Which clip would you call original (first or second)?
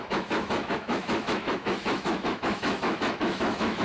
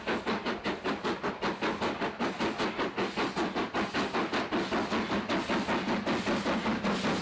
second